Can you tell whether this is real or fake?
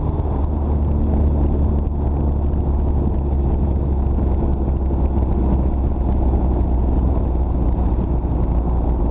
real